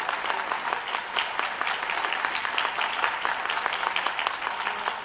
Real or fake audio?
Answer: real